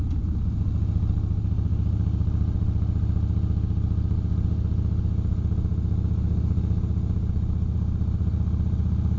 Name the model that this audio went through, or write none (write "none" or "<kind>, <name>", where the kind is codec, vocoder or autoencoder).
none